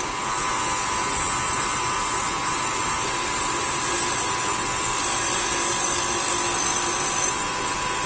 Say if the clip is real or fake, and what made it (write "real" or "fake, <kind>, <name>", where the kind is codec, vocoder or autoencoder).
fake, vocoder, BigVGAN v2